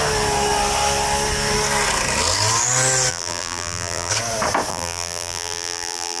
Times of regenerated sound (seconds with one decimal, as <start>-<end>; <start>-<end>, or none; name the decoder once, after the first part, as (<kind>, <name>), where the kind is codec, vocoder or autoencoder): 3.1-4.1 (vocoder, BigVGAN v2); 4.7-6.2